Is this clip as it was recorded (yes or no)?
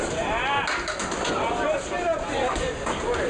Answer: yes